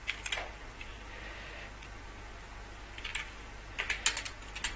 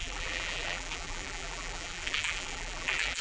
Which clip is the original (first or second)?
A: first